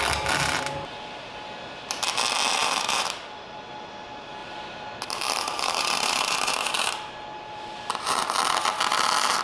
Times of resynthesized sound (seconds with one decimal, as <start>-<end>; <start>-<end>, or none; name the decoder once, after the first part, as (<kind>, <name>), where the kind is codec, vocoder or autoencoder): 2.6-3.2 (vocoder, BigVGAN v2); 4.4-8.2